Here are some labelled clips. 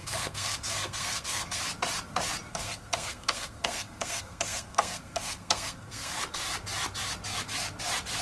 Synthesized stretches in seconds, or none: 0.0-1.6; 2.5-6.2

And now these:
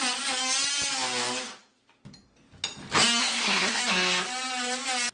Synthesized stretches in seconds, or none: 3.2-3.8

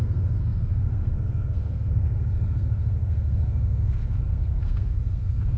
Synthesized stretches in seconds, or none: 0.0-5.6

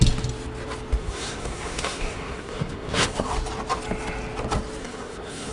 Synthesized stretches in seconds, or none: 1.0-3.3; 4.8-5.5